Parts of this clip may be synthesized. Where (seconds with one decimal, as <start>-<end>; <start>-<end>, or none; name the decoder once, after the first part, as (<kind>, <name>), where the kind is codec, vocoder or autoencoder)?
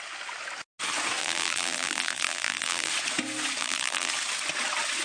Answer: 1.2-2.9 (vocoder, BigVGAN v2); 3.6-4.1